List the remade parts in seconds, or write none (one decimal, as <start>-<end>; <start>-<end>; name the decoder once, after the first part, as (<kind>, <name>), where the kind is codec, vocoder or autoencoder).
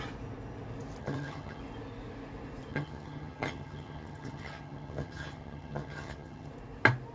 1.0-1.6 (vocoder, HiFi-GAN); 2.7-6.5